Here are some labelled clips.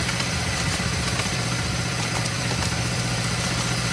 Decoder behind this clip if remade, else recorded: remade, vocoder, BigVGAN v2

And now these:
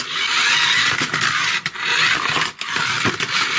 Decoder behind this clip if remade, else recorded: recorded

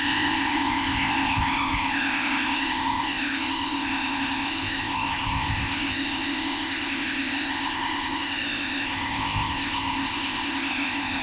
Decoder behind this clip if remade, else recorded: remade, codec, ZipCodec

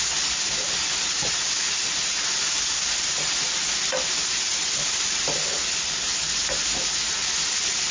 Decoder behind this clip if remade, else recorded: recorded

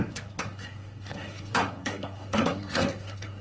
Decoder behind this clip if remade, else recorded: remade, codec, SNAC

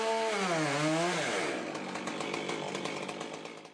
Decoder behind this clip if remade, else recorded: recorded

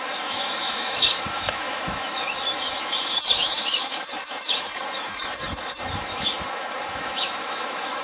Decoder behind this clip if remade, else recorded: remade, autoencoder, DAC-VAE